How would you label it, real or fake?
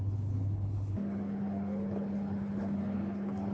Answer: fake